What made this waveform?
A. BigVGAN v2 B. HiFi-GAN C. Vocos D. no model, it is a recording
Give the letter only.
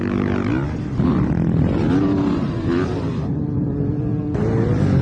D